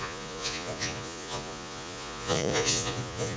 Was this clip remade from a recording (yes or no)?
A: yes